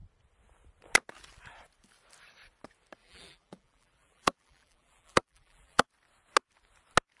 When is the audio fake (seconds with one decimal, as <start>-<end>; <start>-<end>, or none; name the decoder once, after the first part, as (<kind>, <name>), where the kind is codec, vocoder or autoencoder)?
3.0-5.9 (vocoder, BigVGAN v2)